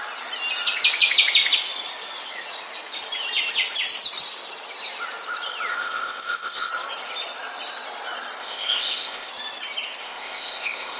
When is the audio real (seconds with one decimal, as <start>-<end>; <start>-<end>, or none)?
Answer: 0.0-5.7; 6.7-8.4; 9.3-10.0